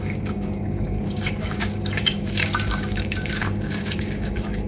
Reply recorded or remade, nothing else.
remade